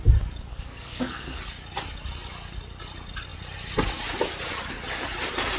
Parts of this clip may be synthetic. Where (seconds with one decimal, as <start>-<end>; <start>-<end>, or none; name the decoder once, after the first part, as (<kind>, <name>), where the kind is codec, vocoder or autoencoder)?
0.5-1.4 (codec, SNAC)